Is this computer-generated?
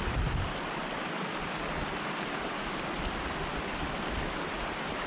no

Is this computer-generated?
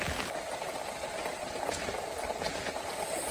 no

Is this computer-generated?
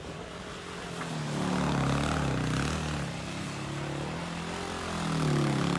no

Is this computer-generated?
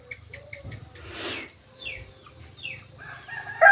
yes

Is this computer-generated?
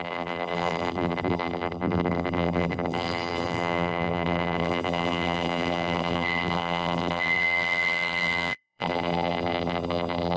yes